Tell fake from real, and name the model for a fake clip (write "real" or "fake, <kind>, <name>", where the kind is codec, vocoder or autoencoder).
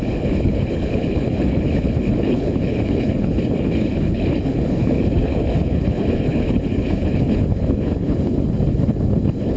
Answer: fake, codec, HILCodec